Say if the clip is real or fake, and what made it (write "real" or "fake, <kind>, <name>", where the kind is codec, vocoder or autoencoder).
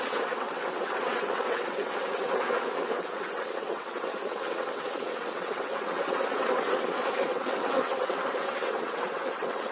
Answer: fake, vocoder, WaveNeXt